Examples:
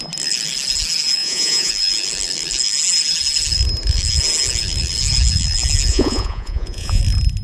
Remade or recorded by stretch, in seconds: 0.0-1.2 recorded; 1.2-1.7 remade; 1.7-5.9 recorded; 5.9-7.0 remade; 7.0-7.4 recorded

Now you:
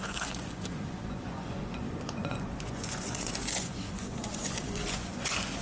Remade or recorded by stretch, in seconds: 0.0-5.6 remade

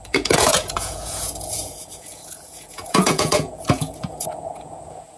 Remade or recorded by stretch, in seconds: 0.0-5.2 remade

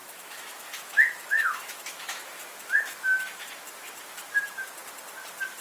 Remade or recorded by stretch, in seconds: 0.0-3.4 remade; 3.4-5.6 recorded

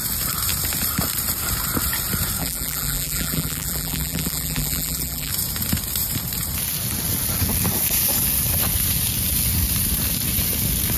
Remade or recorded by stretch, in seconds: 0.0-2.4 recorded; 2.4-5.3 remade; 5.3-11.0 recorded

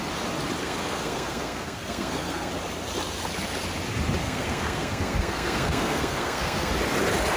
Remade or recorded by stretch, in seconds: 0.0-0.6 recorded; 0.6-2.5 remade; 2.5-4.2 recorded; 4.2-6.7 remade; 6.7-7.4 recorded